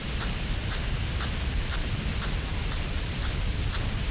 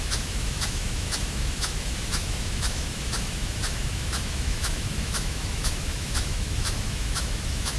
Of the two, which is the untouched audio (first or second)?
first